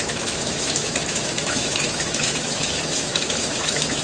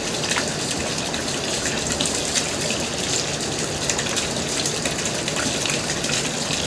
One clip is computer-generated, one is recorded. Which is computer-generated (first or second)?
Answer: first